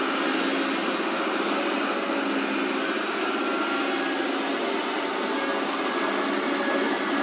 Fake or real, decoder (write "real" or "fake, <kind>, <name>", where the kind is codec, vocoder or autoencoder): real